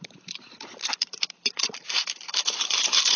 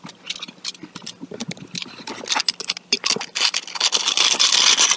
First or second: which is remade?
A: first